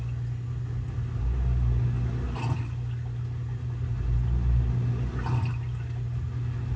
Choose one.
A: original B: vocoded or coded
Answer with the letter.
A